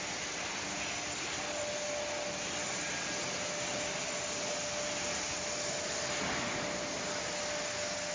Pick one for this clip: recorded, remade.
recorded